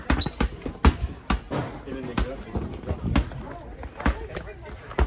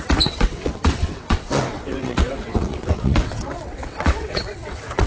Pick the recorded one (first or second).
first